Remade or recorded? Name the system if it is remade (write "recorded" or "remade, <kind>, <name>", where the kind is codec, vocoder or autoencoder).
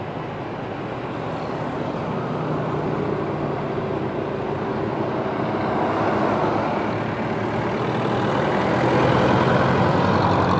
recorded